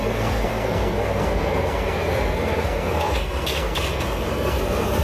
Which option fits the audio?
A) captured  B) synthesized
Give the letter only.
B